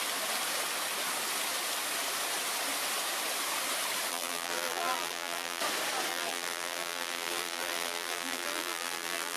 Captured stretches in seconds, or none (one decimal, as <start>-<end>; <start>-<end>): 0.0-4.1; 5.6-6.1